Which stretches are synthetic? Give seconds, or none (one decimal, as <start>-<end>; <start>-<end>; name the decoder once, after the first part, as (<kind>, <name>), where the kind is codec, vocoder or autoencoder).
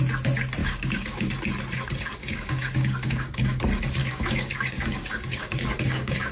0.6-1.3 (codec, DAC); 2.2-3.6; 4.0-6.3